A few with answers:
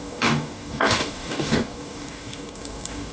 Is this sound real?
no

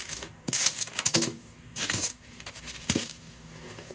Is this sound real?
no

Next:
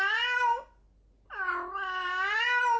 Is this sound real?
yes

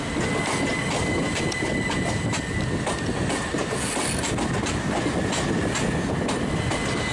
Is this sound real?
yes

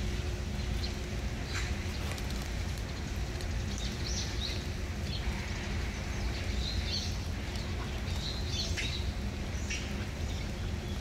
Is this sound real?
yes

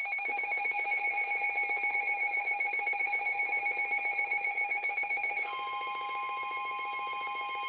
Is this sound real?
no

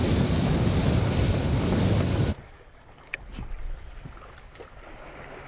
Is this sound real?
yes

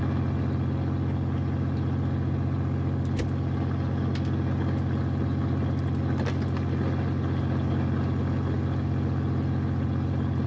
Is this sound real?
yes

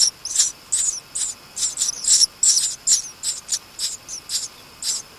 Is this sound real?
yes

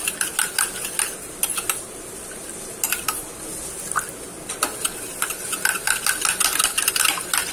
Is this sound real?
yes